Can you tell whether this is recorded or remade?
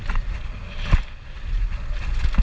recorded